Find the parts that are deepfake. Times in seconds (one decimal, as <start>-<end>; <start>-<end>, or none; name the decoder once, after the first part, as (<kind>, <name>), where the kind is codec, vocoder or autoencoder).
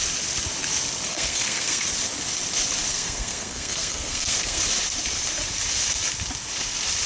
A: 1.1-1.9 (codec, SNAC); 2.9-4.6